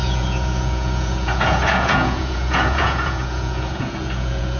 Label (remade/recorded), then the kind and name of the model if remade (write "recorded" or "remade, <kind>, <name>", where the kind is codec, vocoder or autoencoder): remade, vocoder, Vocos